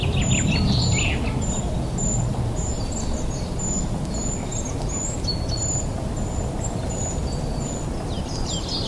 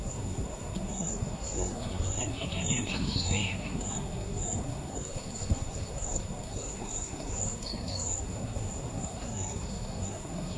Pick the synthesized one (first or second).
second